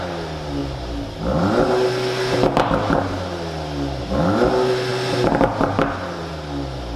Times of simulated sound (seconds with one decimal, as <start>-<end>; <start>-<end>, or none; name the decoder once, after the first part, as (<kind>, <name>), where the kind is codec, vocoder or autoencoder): none